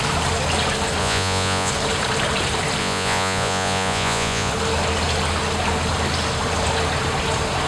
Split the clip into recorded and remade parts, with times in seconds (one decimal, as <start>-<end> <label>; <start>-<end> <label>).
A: 0.0-1.0 recorded; 1.0-1.7 remade; 1.7-2.8 recorded; 2.8-4.5 remade; 4.5-7.7 recorded